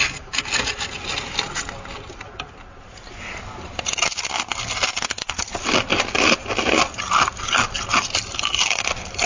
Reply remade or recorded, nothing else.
recorded